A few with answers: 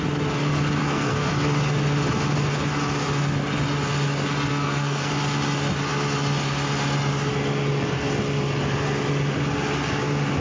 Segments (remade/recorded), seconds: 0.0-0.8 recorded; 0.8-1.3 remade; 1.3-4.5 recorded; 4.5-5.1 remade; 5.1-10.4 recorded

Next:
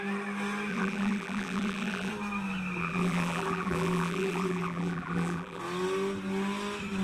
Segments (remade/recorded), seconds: 0.0-0.7 recorded; 0.7-2.1 remade; 2.1-2.8 recorded; 2.8-5.6 remade; 5.6-7.0 recorded

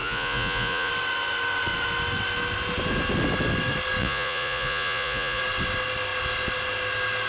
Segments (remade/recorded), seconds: 0.0-0.9 remade; 0.9-4.0 recorded; 4.0-5.4 remade; 5.4-7.3 recorded

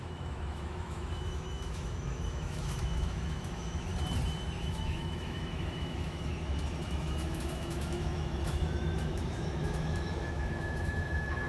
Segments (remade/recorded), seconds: 0.0-3.9 remade; 3.9-4.6 recorded; 4.6-6.3 remade; 6.3-6.9 recorded; 6.9-11.5 remade

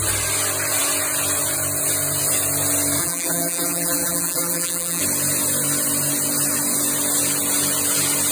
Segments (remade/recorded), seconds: 0.0-3.0 recorded; 3.0-5.0 remade; 5.0-8.3 recorded